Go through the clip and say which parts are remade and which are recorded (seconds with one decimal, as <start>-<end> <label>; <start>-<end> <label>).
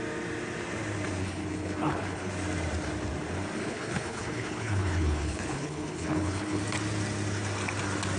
0.0-1.2 recorded; 1.2-2.3 remade; 2.3-3.6 recorded; 3.6-6.6 remade; 6.6-8.2 recorded